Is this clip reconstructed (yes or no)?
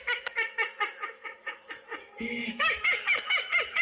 yes